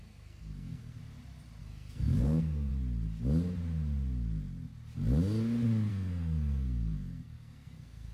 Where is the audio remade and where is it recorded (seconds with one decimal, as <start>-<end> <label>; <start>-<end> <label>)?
0.0-1.0 remade; 1.0-1.6 recorded; 1.6-2.7 remade; 2.7-5.9 recorded; 5.9-8.1 remade